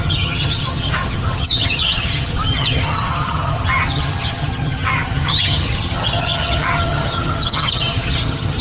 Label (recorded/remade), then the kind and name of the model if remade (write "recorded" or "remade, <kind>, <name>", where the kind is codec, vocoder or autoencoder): remade, vocoder, HiFi-GAN